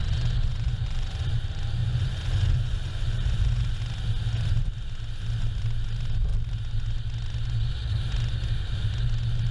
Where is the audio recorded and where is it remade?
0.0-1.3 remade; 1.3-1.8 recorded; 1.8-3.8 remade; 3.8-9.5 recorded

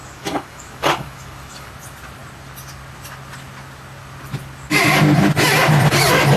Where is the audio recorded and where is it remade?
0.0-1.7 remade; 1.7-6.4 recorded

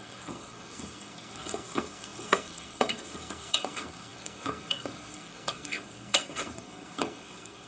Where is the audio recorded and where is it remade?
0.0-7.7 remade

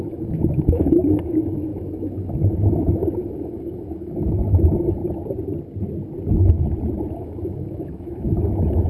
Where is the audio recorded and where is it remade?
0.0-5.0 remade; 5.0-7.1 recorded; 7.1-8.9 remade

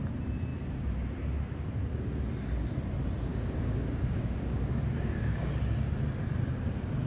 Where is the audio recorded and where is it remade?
0.0-3.3 recorded; 3.3-5.5 remade; 5.5-7.1 recorded

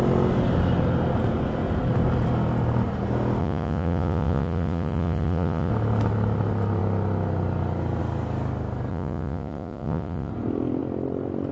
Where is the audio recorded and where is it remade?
0.0-3.4 recorded; 3.4-5.7 remade; 5.7-8.9 recorded; 8.9-10.3 remade; 10.3-11.5 recorded

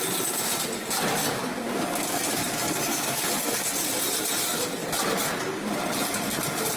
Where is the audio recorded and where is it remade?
0.0-1.3 recorded; 1.3-3.9 remade; 3.9-6.8 recorded